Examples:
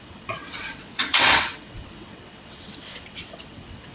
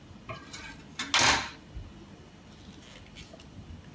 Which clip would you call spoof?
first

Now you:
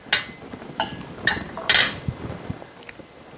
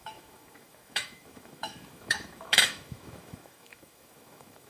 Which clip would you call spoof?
second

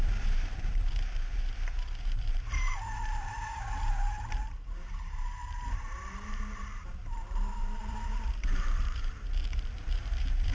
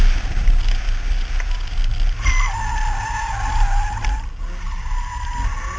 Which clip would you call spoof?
first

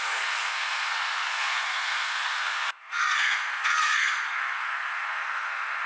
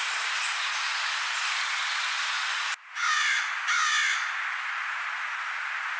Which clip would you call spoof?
first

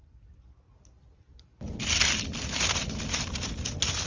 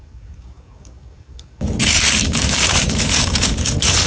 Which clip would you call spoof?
second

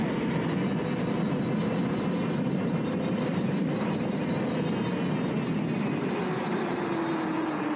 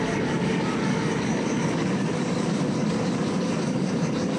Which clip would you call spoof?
second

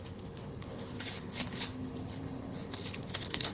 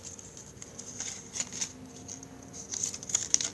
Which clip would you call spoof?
first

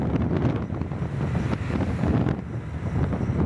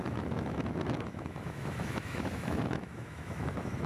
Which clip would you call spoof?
second